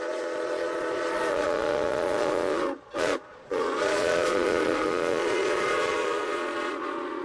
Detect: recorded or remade remade